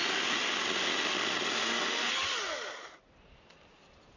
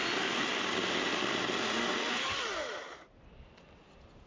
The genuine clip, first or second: first